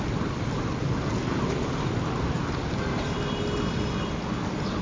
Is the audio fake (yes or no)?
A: no